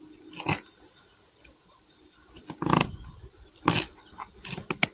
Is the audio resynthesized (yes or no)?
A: no